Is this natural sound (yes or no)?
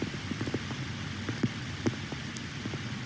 yes